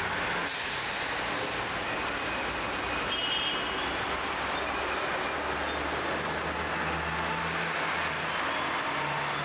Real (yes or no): yes